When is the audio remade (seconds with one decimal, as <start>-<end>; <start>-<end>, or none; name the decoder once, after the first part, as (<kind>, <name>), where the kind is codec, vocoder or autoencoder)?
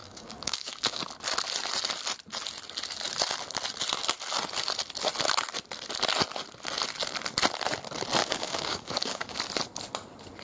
0.0-1.0 (codec, DAC); 8.2-9.4